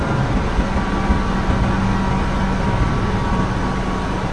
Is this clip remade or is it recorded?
recorded